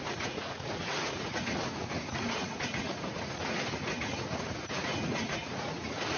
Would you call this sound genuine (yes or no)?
no